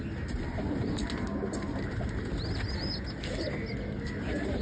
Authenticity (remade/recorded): recorded